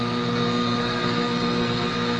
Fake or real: fake